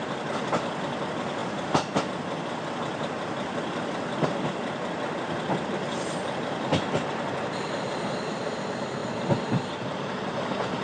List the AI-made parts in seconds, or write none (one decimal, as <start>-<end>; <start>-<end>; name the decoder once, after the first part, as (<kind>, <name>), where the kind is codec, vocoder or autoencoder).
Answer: 0.0-10.8 (vocoder, BigVGAN v2)